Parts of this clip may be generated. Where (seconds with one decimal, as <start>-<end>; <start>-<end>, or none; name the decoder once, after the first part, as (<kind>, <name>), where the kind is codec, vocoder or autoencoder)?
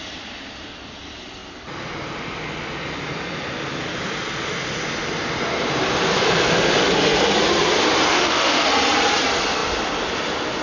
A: 8.1-8.7 (autoencoder, DAC-VAE)